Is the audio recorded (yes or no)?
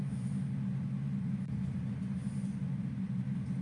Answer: yes